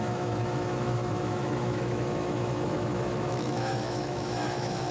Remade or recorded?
remade